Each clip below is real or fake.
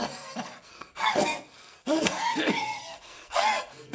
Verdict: fake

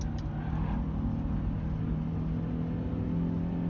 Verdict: real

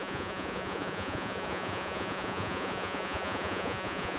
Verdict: fake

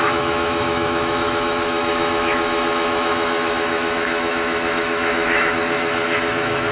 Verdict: fake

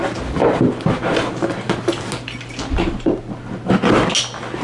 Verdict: real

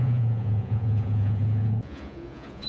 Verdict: fake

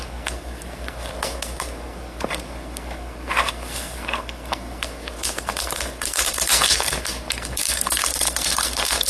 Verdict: fake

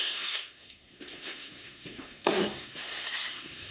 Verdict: fake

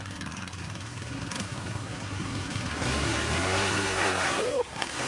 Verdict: fake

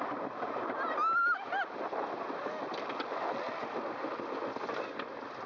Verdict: real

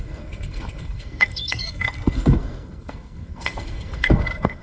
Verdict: fake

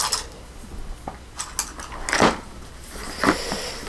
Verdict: real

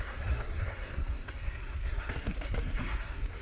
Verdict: fake